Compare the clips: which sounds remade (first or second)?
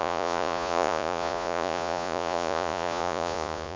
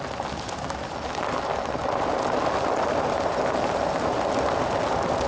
first